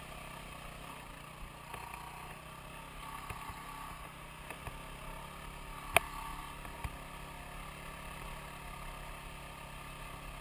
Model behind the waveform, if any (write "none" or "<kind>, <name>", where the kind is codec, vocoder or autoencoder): none